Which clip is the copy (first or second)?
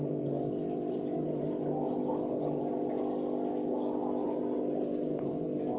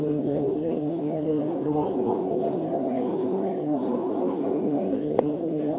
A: second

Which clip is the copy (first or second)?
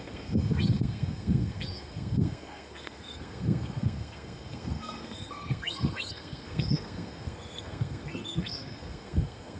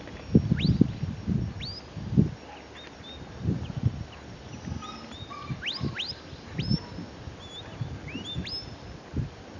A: first